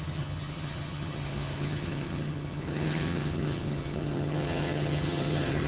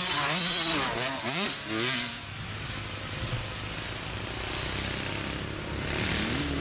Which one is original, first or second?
second